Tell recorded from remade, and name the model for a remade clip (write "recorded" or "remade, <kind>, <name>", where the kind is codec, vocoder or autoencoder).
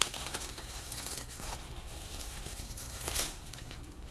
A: remade, codec, SNAC